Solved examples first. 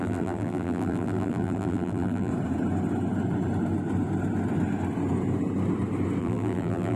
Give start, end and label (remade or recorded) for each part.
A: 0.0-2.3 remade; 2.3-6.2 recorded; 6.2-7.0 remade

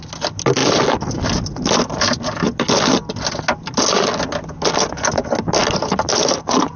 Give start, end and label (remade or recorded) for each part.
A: 0.0-6.8 recorded

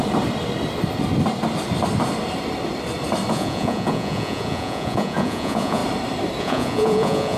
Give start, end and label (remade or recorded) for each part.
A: 0.0-3.3 recorded; 3.3-5.8 remade; 5.8-6.4 recorded; 6.4-7.4 remade

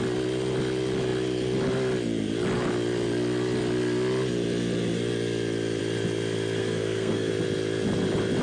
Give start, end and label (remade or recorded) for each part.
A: 0.0-6.6 recorded; 6.6-7.3 remade; 7.3-8.4 recorded